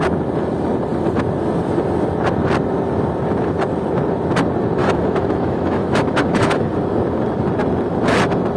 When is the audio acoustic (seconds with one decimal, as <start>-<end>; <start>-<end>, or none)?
0.0-4.8; 6.7-8.6